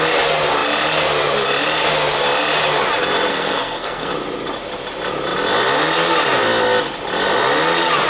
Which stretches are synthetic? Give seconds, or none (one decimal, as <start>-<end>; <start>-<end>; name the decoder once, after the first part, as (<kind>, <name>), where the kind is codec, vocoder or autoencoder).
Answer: 3.3-4.1 (codec, SNAC)

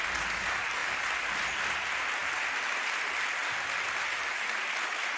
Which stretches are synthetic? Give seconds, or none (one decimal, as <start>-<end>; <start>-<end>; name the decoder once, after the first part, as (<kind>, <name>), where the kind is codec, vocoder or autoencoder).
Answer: none

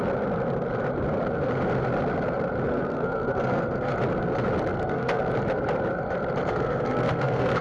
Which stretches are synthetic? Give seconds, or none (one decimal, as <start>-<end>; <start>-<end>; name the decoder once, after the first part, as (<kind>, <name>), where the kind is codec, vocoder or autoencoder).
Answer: 2.7-3.9 (codec, SNAC); 4.7-5.2; 6.5-7.6

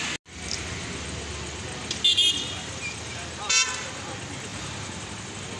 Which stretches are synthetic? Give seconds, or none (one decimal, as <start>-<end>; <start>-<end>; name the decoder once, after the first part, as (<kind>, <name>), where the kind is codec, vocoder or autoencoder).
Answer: none

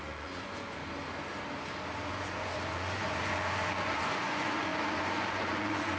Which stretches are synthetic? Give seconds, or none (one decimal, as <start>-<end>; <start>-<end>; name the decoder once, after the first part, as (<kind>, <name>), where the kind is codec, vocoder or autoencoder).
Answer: 0.0-0.8 (vocoder, Vocos); 2.1-6.0